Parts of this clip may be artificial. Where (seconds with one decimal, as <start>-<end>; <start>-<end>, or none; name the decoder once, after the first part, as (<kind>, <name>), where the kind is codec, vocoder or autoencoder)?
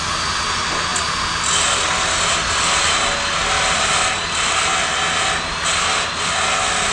none